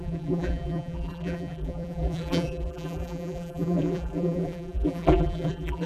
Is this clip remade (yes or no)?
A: yes